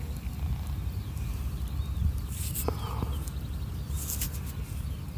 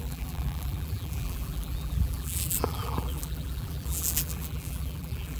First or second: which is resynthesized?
second